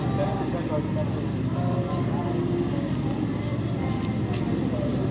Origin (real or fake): real